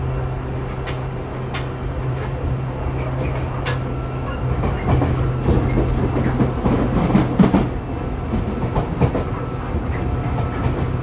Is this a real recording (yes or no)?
yes